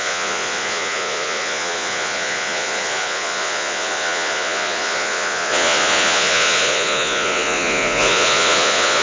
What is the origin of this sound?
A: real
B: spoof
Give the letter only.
B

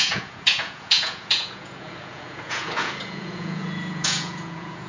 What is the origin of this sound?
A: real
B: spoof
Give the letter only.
B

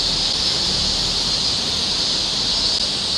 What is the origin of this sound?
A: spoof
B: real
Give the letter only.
B